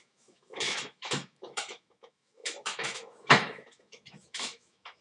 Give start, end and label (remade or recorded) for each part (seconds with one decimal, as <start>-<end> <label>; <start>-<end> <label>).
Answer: 0.0-5.0 remade